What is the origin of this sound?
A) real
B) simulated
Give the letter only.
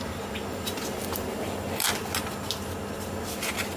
A